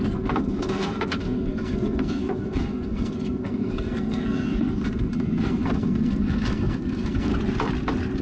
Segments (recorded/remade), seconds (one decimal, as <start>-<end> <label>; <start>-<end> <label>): 0.0-7.3 remade; 7.3-8.2 recorded